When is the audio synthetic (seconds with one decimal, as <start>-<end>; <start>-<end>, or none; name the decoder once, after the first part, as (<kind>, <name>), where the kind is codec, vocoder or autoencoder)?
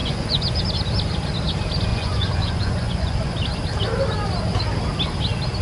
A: 0.0-0.6 (vocoder, Vocos); 1.9-3.4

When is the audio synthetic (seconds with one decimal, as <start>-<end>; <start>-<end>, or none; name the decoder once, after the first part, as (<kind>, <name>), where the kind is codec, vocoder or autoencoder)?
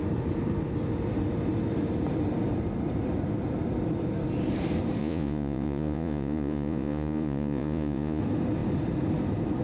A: 5.0-8.2 (vocoder, Vocos)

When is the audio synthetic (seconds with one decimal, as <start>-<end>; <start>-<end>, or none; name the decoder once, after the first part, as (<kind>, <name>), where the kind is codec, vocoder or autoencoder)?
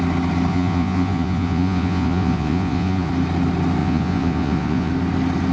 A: 0.5-3.1 (vocoder, Vocos); 3.8-4.9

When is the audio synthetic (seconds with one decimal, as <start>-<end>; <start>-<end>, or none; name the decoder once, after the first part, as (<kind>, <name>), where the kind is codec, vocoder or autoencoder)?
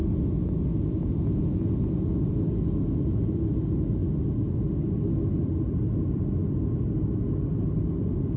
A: 0.0-2.4 (vocoder, Vocos)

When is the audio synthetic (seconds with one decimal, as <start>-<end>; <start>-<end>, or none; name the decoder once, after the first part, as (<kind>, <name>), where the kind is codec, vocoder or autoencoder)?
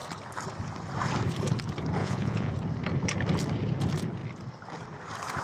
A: 2.0-2.5 (vocoder, Vocos)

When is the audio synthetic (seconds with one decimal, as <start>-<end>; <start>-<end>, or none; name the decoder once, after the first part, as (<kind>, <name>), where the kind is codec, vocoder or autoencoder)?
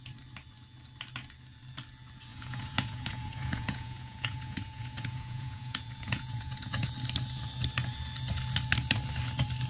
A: 2.3-6.9 (vocoder, Vocos)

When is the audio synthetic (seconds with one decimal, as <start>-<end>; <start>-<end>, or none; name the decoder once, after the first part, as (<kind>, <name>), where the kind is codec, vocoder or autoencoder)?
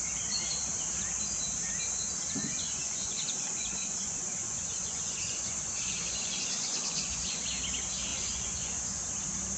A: 2.4-7.4 (vocoder, Vocos); 8.1-9.0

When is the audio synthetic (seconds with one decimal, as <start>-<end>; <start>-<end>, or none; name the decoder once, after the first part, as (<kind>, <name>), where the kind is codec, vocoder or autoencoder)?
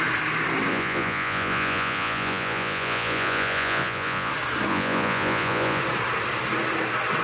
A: 0.7-4.3 (vocoder, Vocos); 4.7-5.8